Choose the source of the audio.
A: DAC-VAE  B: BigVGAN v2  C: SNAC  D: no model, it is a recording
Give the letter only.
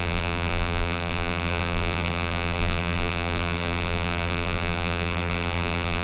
B